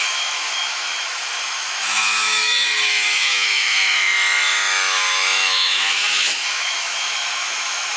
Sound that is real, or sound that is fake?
fake